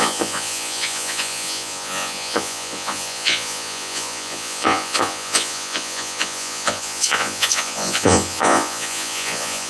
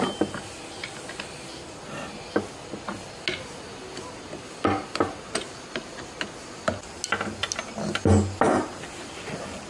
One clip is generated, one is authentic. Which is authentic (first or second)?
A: second